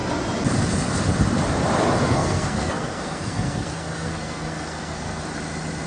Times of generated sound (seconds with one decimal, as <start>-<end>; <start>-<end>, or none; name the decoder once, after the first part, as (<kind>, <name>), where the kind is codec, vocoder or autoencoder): 2.0-5.2 (codec, SNAC)